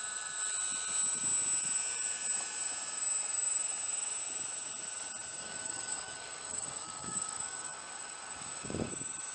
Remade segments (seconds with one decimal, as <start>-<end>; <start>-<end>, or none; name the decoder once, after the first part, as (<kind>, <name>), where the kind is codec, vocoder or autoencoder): 5.4-8.9 (codec, DAC)